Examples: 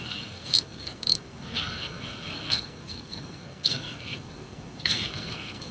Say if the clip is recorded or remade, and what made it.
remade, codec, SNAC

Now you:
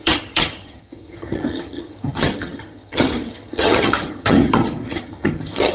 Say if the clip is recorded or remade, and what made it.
remade, vocoder, HiFi-GAN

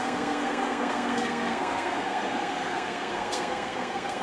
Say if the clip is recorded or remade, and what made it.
remade, codec, SNAC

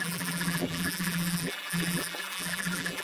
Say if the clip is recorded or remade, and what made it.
remade, vocoder, BigVGAN v2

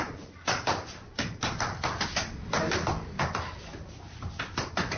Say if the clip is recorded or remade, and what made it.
recorded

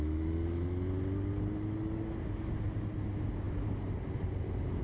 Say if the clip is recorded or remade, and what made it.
recorded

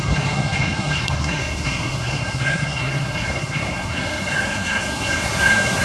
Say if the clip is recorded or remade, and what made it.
remade, codec, SNAC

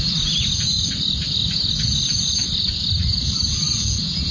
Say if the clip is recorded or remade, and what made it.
recorded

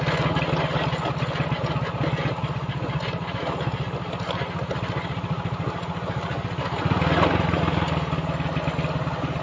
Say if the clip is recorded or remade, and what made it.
recorded